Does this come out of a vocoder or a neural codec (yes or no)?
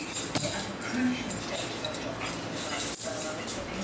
no